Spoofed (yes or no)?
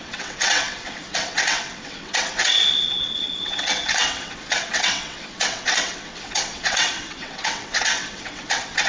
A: yes